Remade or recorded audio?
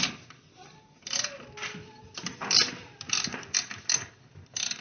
recorded